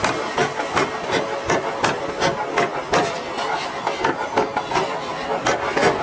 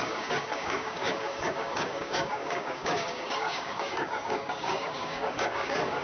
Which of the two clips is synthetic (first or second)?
second